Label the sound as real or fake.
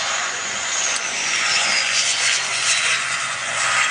fake